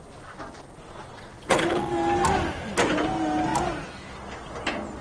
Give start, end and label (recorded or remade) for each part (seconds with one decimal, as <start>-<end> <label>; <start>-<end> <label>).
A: 0.0-1.1 recorded; 1.1-1.9 remade; 1.9-5.0 recorded